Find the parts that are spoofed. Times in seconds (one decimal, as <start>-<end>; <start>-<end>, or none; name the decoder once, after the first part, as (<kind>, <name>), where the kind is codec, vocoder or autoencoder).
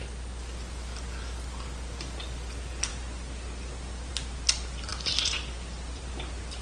4.9-6.1 (vocoder, BigVGAN v2)